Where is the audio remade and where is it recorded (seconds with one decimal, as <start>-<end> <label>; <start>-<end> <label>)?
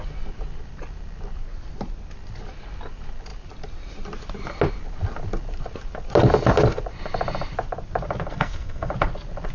0.0-8.3 recorded; 8.3-8.9 remade; 8.9-9.5 recorded